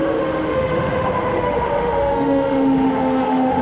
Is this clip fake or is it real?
fake